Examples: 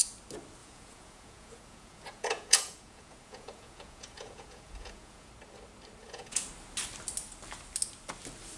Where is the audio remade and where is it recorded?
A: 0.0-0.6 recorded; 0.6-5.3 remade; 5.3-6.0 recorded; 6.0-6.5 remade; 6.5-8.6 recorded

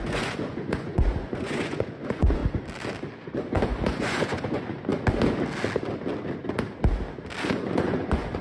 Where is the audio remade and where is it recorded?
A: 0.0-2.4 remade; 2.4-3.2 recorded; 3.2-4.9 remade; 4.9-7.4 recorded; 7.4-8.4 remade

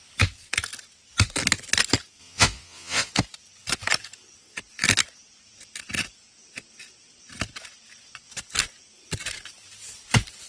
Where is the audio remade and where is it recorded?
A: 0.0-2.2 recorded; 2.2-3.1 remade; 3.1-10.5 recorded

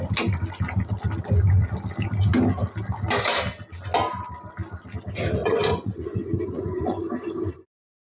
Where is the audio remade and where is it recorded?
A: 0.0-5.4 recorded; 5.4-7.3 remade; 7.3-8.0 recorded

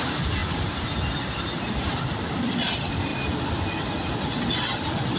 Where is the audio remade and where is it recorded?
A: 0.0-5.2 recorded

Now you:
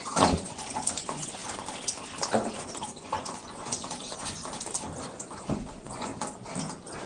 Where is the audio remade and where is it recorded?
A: 0.0-1.4 remade; 1.4-2.3 recorded; 2.3-4.4 remade; 4.4-5.1 recorded; 5.1-6.1 remade; 6.1-7.1 recorded

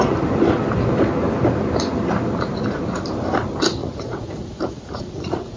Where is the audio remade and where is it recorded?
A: 0.0-3.8 recorded; 3.8-5.6 remade

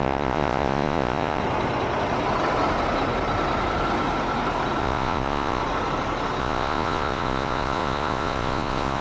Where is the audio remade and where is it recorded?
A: 0.0-1.4 remade; 1.4-4.8 recorded; 4.8-5.6 remade; 5.6-6.4 recorded; 6.4-9.0 remade